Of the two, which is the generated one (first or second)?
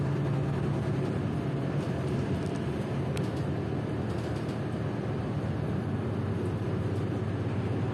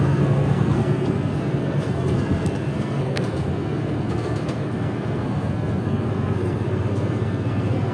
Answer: second